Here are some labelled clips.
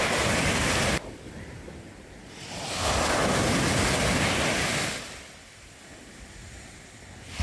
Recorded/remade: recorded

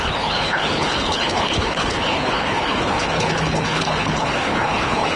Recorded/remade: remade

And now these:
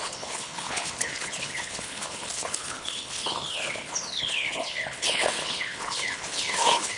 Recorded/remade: remade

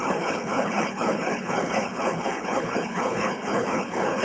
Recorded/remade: remade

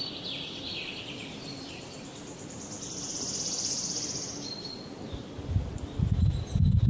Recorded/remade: recorded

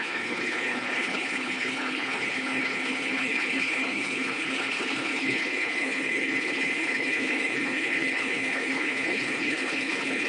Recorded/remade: remade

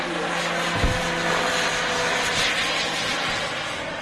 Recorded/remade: recorded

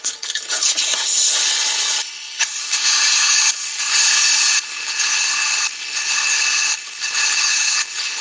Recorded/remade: remade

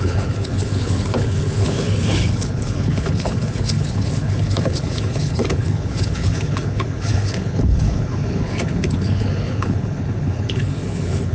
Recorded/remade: remade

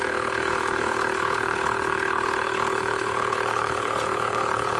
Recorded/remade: remade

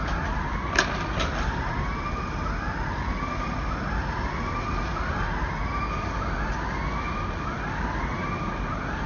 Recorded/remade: recorded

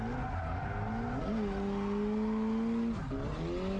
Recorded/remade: recorded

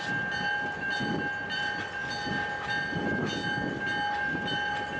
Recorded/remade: recorded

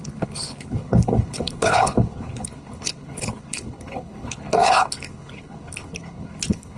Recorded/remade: remade